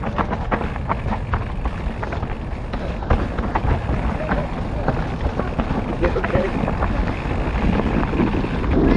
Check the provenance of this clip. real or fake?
real